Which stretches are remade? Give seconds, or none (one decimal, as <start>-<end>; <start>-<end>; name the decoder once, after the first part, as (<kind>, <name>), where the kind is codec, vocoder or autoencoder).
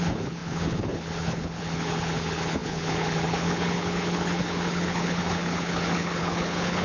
0.0-6.8 (codec, HILCodec)